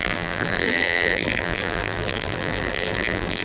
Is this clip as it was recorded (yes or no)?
no